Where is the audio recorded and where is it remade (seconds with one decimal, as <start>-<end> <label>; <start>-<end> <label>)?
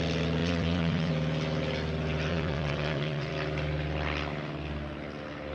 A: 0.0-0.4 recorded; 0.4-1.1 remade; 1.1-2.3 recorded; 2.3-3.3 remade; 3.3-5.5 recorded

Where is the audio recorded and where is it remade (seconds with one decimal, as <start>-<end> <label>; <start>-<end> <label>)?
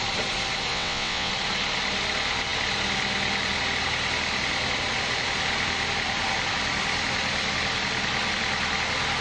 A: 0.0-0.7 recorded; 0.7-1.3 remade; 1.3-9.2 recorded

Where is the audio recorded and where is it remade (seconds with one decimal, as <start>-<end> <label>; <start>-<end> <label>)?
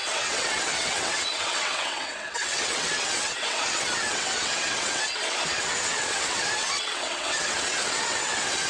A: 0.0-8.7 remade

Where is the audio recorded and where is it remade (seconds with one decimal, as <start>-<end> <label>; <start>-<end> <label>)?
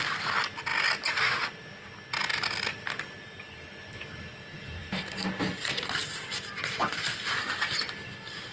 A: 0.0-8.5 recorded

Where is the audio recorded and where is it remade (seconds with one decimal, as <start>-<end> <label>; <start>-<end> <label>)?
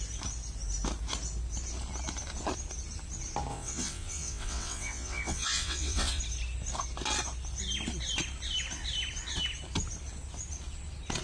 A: 0.0-3.5 recorded; 3.5-6.2 remade; 6.2-11.2 recorded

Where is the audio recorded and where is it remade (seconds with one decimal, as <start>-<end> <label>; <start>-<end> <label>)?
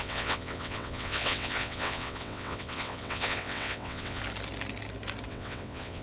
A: 0.0-4.2 remade; 4.2-5.3 recorded; 5.3-6.0 remade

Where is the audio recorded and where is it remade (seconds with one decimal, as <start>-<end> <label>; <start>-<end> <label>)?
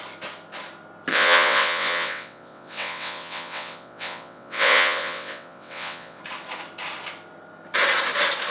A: 0.0-1.1 recorded; 1.1-6.2 remade; 6.2-8.5 recorded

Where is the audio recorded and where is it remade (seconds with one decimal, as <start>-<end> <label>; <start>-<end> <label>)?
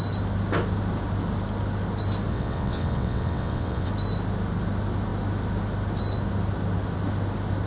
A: 0.0-2.3 recorded; 2.3-3.9 remade; 3.9-7.7 recorded